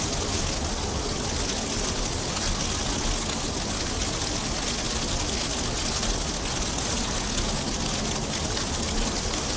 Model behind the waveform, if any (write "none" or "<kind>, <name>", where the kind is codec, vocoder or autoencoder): none